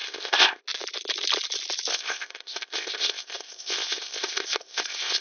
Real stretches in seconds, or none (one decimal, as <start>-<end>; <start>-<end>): 0.6-1.9